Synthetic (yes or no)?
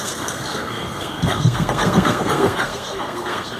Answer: yes